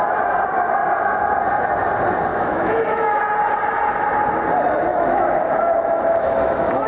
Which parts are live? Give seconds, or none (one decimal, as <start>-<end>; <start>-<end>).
0.0-2.3; 3.2-4.9